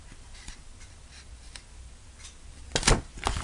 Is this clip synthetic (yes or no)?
no